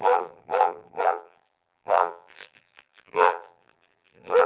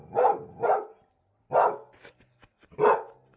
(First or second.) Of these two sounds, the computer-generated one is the first